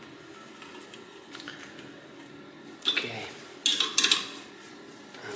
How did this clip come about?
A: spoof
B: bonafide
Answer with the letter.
B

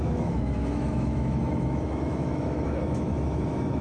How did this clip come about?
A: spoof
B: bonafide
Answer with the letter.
A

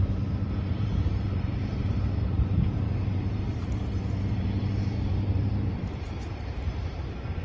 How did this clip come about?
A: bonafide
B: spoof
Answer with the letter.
B